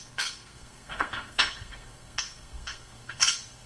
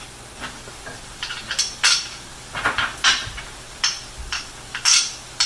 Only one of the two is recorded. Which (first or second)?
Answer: second